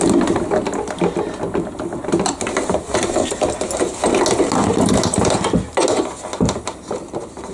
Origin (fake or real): real